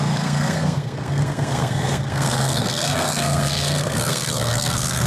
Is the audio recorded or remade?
remade